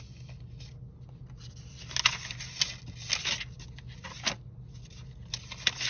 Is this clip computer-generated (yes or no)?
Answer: no